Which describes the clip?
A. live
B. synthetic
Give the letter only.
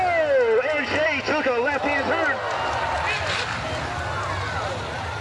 A